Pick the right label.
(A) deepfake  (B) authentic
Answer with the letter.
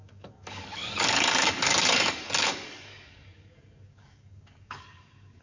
A